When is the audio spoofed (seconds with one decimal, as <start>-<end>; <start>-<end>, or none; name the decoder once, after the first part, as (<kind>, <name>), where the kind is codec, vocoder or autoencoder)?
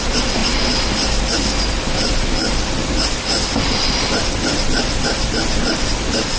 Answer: 4.5-5.2 (vocoder, BigVGAN v2)